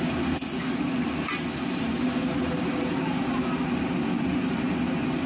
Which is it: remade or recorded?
recorded